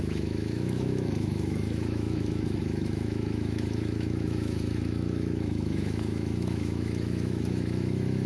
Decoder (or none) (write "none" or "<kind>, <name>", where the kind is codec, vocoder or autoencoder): autoencoder, DAC-VAE